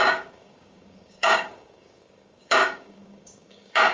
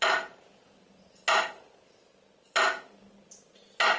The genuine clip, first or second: second